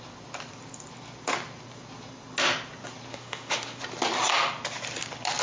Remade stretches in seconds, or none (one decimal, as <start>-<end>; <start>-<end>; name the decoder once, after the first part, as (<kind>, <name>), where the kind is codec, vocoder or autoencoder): 3.1-3.8 (autoencoder, DAC-VAE)